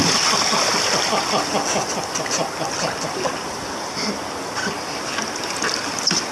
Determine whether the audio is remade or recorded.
recorded